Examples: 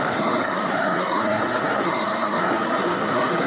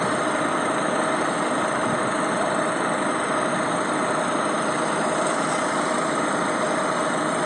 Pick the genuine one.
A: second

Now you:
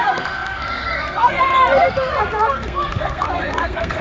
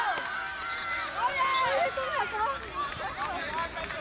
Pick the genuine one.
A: second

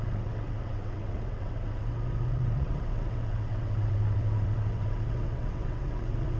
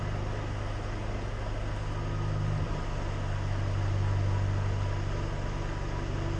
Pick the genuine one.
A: second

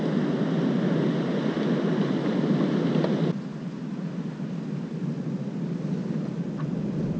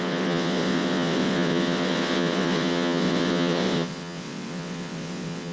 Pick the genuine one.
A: first